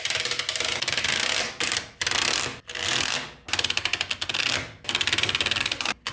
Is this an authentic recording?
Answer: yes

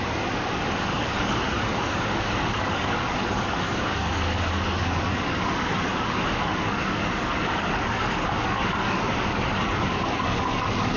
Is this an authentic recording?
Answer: no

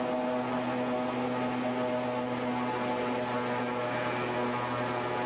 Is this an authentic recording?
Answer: yes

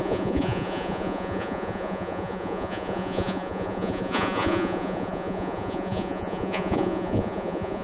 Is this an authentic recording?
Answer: no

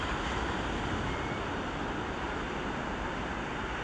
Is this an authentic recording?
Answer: yes